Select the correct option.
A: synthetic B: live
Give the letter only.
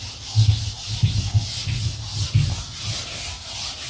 B